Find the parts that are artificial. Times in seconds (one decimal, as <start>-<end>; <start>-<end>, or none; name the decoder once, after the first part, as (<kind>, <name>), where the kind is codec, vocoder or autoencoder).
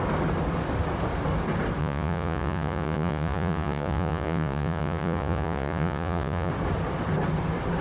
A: 1.8-6.5 (vocoder, Vocos)